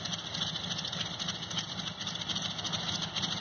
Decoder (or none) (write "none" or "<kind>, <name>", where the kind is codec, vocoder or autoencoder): none